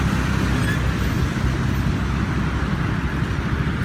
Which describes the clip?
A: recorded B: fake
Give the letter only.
A